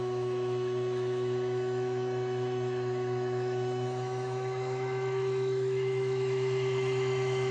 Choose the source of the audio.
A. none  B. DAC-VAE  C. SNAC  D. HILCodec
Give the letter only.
B